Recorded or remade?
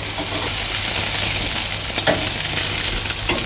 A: recorded